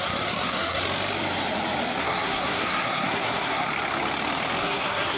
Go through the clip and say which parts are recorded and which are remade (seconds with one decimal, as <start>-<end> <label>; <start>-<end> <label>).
0.0-0.8 remade; 0.8-2.0 recorded; 2.0-3.7 remade; 3.7-4.6 recorded; 4.6-5.2 remade